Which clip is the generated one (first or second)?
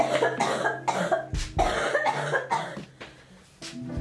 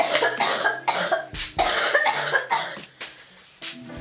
second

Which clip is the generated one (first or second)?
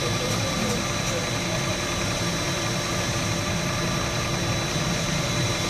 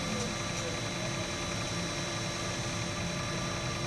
first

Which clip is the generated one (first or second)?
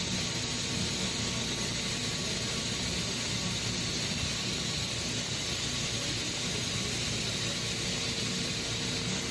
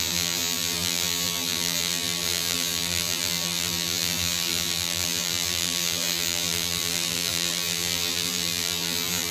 second